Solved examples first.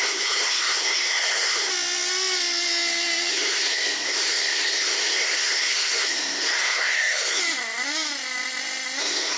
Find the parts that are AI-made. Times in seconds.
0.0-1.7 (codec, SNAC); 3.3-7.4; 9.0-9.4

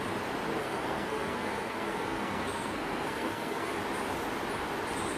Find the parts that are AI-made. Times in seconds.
0.6-3.7 (codec, SNAC)

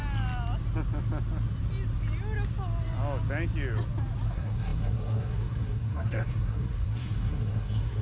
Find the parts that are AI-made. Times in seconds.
4.3-8.0 (codec, SNAC)

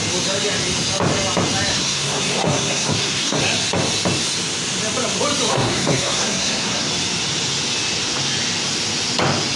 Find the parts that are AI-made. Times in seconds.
1.7-3.4 (codec, SNAC); 5.5-6.9

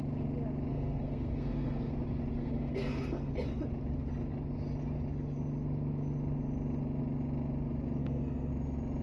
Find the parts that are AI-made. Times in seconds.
0.7-1.9 (codec, SNAC); 2.4-3.3; 8.0-8.5

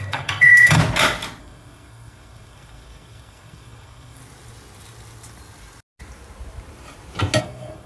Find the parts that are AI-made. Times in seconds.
0.0-0.8 (codec, SNAC); 1.4-4.2; 7.4-7.9

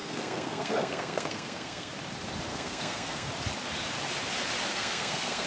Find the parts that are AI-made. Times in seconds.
0.0-1.9 (codec, SNAC); 2.5-3.3; 4.7-5.5

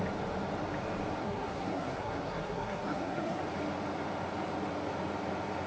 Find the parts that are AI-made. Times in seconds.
1.2-3.4 (codec, SNAC)